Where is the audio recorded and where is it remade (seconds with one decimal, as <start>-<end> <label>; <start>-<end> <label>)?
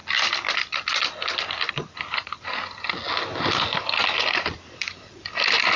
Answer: 0.0-5.8 recorded